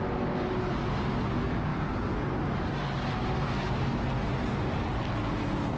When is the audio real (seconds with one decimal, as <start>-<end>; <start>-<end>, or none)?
0.0-5.8